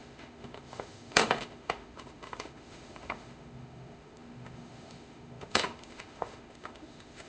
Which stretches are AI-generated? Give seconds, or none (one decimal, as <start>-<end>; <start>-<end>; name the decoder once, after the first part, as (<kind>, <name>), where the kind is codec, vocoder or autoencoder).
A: 0.0-7.3 (autoencoder, DAC-VAE)

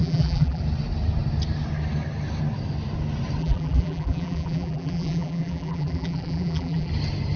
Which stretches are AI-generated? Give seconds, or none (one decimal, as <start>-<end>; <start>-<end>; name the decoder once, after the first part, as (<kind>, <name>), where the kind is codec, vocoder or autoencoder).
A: 0.0-0.6 (vocoder, BigVGAN v2); 3.4-6.9

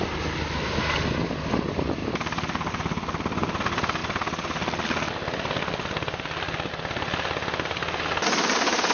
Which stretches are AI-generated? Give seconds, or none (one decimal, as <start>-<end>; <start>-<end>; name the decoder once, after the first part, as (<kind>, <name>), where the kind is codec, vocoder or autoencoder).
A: none

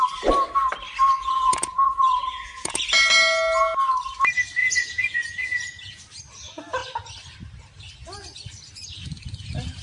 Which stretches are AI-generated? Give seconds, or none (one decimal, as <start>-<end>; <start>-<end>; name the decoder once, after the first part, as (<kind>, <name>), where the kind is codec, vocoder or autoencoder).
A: 1.2-2.8 (vocoder, Vocos); 4.6-6.0

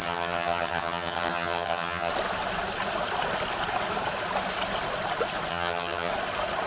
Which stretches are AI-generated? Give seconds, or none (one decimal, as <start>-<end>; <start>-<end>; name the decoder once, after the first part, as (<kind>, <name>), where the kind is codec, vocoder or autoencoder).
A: 0.0-2.1 (vocoder, HiFi-GAN); 5.5-6.1